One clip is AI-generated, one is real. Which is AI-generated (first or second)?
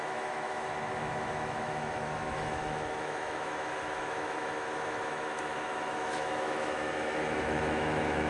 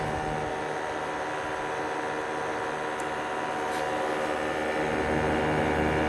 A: first